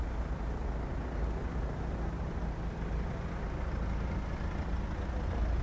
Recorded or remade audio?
recorded